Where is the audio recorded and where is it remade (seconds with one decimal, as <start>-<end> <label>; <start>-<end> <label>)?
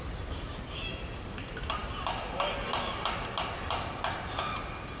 0.0-5.0 recorded